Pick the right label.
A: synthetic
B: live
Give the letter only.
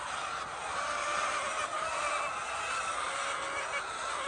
B